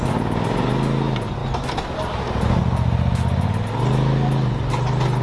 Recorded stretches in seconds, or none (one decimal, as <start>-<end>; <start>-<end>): 0.0-5.2